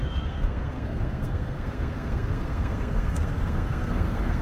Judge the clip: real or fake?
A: fake